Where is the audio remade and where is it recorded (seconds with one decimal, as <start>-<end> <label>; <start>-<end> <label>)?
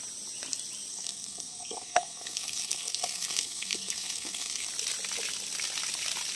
0.0-0.9 recorded; 0.9-4.7 remade; 4.7-6.4 recorded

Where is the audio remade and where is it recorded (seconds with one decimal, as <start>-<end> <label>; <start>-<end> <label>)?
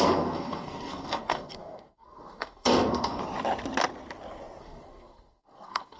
0.0-3.2 remade; 3.2-4.6 recorded; 4.6-6.0 remade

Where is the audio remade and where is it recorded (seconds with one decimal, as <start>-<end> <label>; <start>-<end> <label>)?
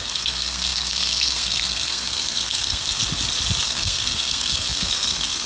0.0-3.0 remade; 3.0-3.6 recorded; 3.6-5.5 remade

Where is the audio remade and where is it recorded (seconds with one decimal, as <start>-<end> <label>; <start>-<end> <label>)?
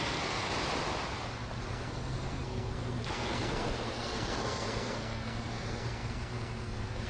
0.0-0.5 remade; 0.5-1.7 recorded; 1.7-7.1 remade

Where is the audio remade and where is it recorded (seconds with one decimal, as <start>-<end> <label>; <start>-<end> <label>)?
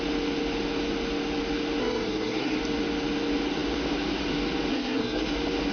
0.0-1.8 recorded; 1.8-2.6 remade; 2.6-4.7 recorded; 4.7-5.3 remade; 5.3-5.7 recorded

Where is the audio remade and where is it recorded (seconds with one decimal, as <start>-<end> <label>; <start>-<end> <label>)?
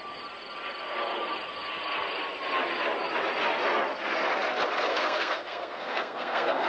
0.0-4.9 recorded; 4.9-6.7 remade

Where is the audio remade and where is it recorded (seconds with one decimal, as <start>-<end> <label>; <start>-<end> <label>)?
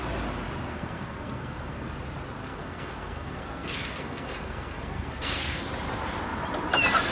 0.0-0.7 recorded; 0.7-1.9 remade; 1.9-2.4 recorded; 2.4-5.6 remade; 5.6-7.1 recorded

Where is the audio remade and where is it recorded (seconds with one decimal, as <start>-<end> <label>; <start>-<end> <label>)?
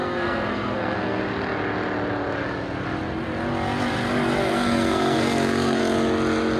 0.0-1.2 remade; 1.2-4.4 recorded; 4.4-5.8 remade; 5.8-6.6 recorded